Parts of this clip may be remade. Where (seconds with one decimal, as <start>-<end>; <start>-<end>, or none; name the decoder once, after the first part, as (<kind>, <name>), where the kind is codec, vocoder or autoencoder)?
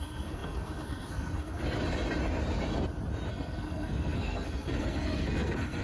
0.0-1.6 (codec, SNAC); 3.3-5.8